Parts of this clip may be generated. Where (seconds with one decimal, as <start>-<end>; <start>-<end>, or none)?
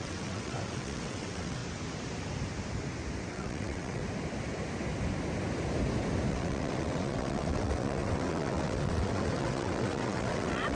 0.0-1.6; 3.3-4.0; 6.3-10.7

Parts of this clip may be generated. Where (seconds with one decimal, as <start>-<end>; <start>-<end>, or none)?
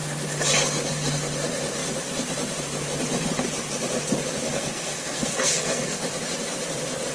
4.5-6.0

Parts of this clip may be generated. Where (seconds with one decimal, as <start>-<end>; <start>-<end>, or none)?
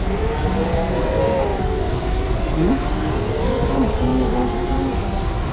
0.0-5.5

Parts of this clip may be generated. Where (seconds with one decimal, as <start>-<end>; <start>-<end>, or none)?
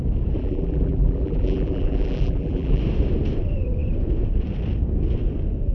0.4-2.8